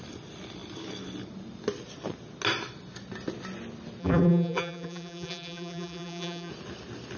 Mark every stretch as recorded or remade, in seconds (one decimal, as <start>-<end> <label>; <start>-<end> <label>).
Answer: 0.0-4.0 recorded; 4.0-6.5 remade; 6.5-7.2 recorded

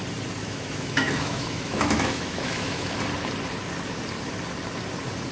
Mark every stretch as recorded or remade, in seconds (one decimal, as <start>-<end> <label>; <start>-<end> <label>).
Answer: 0.0-0.4 recorded; 0.4-3.0 remade; 3.0-5.3 recorded